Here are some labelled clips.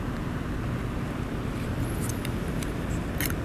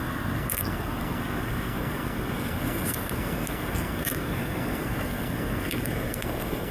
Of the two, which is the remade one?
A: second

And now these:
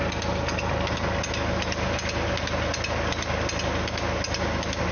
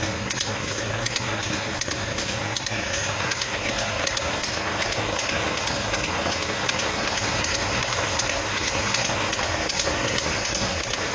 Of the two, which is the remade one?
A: second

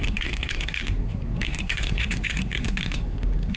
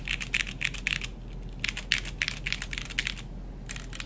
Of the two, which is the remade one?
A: first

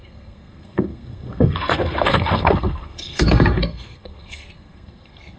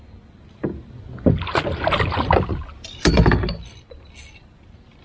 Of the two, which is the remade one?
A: first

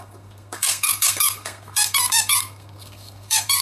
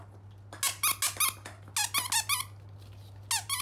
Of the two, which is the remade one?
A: first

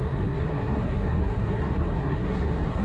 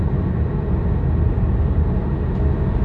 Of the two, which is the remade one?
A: first